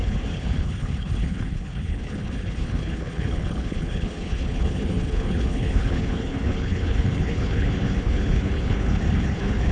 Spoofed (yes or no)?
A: yes